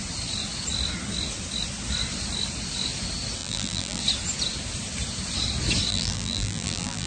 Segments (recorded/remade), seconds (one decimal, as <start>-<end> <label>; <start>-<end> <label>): 0.0-3.4 recorded; 3.4-4.0 remade; 4.0-5.9 recorded; 5.9-7.1 remade